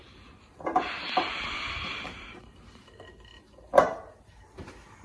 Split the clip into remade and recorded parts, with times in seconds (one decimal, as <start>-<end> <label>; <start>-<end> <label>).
0.0-5.0 recorded